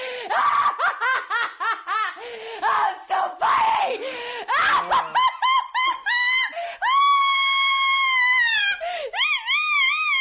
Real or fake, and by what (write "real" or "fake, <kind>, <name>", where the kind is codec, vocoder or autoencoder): real